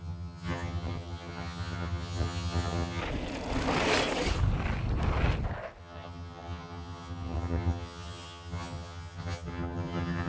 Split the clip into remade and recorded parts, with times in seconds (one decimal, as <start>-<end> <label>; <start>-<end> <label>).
0.0-3.0 remade; 3.0-5.8 recorded; 5.8-10.3 remade